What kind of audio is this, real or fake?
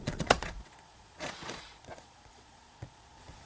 fake